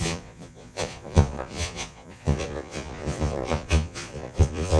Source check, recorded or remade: remade